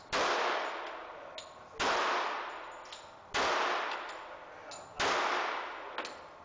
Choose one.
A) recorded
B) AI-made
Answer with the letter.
A